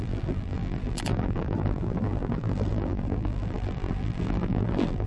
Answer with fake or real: fake